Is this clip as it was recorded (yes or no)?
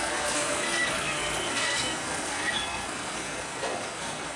no